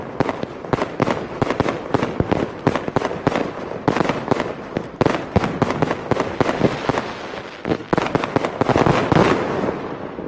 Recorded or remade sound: recorded